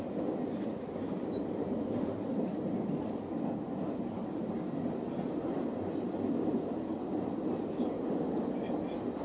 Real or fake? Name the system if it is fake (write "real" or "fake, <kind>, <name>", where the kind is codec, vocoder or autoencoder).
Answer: real